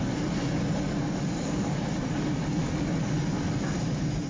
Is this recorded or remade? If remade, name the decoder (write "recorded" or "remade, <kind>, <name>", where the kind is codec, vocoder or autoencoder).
recorded